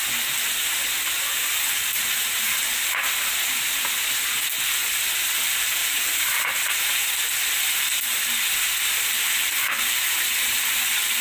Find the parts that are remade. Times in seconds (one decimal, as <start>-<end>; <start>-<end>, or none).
5.8-7.0; 9.4-10.7